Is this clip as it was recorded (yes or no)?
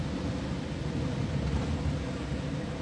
yes